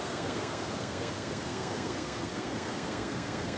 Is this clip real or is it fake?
fake